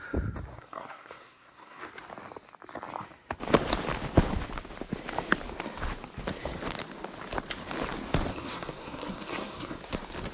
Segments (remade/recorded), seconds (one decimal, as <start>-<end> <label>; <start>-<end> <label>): 0.0-0.5 recorded; 0.5-1.8 remade; 1.8-8.3 recorded; 8.3-9.8 remade; 9.8-10.3 recorded